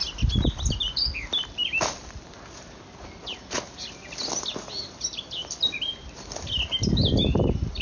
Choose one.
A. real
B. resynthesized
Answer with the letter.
A